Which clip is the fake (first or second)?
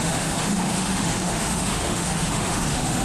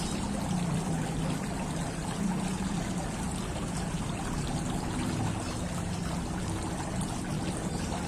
first